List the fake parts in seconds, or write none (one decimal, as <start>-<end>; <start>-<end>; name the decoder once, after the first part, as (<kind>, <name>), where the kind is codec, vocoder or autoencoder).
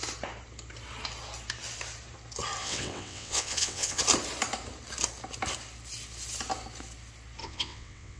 2.6-4.0 (vocoder, WaveNeXt); 7.4-8.2